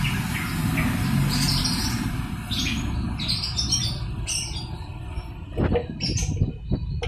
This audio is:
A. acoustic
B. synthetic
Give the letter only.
A